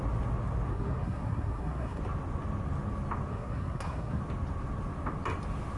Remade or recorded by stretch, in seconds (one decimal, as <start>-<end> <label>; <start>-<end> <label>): 0.0-0.7 recorded; 0.7-2.0 remade; 2.0-3.3 recorded; 3.3-4.2 remade; 4.2-5.8 recorded